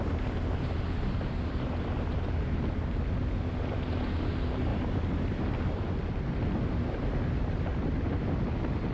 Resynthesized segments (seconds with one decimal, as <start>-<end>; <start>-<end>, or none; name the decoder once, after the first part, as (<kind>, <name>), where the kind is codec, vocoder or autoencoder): none